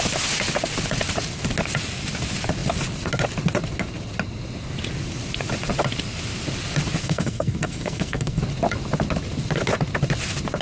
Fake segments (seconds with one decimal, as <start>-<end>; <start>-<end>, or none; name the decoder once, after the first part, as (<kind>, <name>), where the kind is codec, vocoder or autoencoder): 7.0-8.4 (codec, SNAC)

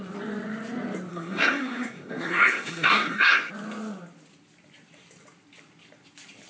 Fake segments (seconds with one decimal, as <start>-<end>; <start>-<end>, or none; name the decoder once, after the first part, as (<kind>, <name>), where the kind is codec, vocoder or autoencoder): 1.1-3.5 (codec, SNAC)

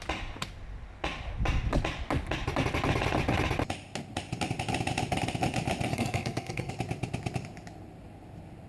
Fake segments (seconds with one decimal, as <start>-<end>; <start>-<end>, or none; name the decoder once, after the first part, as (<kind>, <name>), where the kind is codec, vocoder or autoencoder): 5.9-6.7 (codec, SNAC)

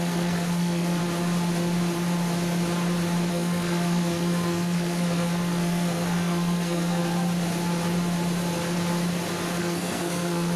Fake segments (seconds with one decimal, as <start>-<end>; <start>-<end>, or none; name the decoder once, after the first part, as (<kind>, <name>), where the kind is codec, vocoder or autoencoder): 0.0-1.0 (codec, SNAC); 3.3-7.0; 9.6-10.6

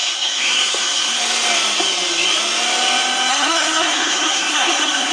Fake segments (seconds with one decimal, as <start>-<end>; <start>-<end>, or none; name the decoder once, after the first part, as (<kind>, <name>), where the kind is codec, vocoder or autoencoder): 0.0-1.2 (codec, SNAC); 3.3-5.1

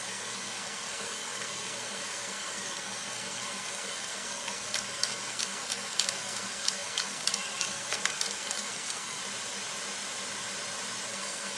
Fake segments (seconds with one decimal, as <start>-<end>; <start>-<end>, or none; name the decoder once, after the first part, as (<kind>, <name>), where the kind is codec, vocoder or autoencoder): 0.0-9.2 (codec, SNAC); 11.1-11.6

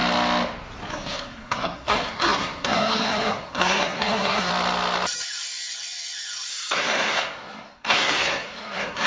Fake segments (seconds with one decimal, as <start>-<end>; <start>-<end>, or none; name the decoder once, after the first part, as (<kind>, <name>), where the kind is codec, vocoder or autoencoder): 0.9-4.5 (codec, SNAC); 6.5-9.1

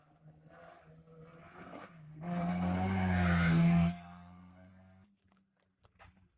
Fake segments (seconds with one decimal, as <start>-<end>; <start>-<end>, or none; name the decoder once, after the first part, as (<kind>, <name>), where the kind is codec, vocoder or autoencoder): 1.6-4.7 (codec, SNAC)